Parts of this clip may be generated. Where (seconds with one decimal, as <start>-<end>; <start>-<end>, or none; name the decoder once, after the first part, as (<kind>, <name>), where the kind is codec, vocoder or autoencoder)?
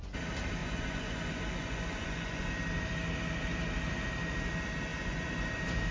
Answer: 0.6-2.5 (vocoder, Vocos); 4.9-5.5